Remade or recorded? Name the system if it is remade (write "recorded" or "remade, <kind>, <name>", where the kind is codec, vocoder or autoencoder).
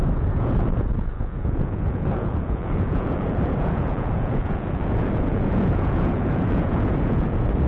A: remade, vocoder, Vocos